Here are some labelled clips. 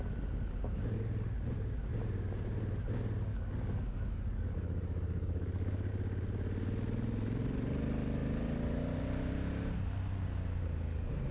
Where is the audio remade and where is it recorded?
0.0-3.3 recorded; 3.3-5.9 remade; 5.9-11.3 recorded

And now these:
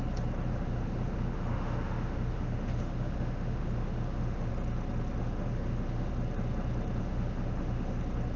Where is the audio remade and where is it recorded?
0.0-0.5 recorded; 0.5-4.5 remade; 4.5-5.2 recorded; 5.2-6.1 remade; 6.1-7.0 recorded; 7.0-8.0 remade; 8.0-8.4 recorded

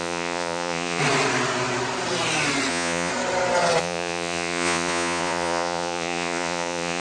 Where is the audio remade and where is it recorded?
0.0-1.0 remade; 1.0-2.7 recorded; 2.7-3.1 remade; 3.1-3.8 recorded; 3.8-7.0 remade

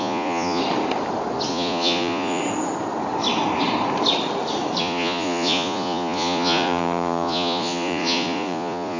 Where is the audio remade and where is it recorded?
0.0-0.6 remade; 0.6-1.5 recorded; 1.5-2.4 remade; 2.4-4.8 recorded; 4.8-9.0 remade

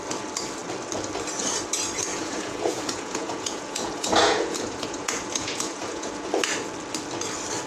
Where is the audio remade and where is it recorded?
0.0-2.1 recorded; 2.1-6.3 remade; 6.3-7.7 recorded